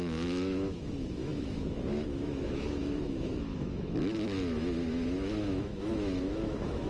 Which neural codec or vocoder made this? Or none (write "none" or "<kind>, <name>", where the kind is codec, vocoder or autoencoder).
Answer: autoencoder, DAC-VAE